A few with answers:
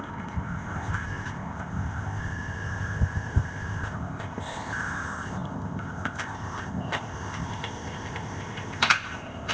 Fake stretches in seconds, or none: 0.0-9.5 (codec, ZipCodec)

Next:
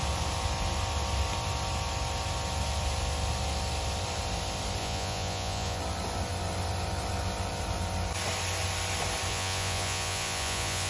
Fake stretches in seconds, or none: 4.8-5.8 (vocoder, Vocos); 9.3-10.9

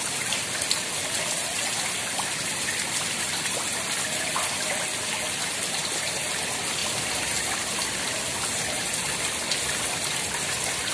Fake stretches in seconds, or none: none

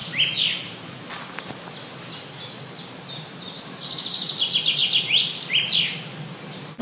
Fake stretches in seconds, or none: none